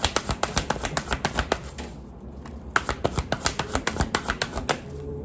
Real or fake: real